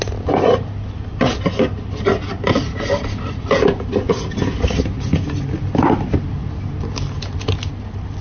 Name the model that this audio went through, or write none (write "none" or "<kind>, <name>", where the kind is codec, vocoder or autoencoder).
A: none